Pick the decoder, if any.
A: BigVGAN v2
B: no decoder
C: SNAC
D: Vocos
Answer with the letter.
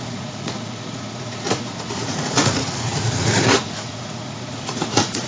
D